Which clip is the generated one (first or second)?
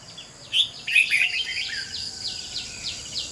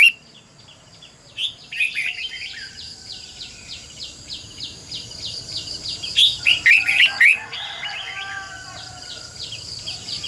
second